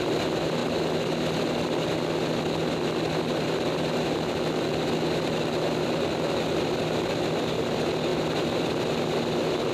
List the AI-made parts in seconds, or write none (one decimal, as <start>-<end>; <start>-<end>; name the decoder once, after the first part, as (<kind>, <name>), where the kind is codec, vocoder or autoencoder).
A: none